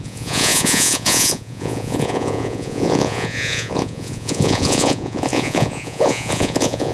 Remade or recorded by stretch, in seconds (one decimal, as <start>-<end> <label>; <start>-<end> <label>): 0.0-6.9 remade